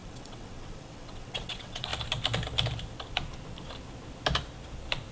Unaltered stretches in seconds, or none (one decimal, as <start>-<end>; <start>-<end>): 1.9-5.1